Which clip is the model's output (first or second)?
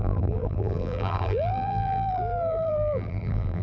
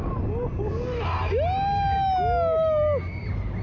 first